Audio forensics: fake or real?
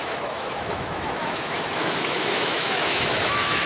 fake